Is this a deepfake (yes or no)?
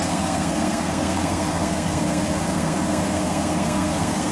yes